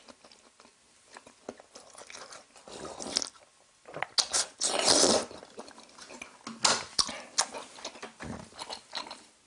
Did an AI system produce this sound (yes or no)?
no